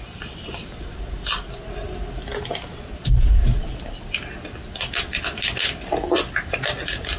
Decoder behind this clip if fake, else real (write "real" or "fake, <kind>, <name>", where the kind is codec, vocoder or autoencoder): real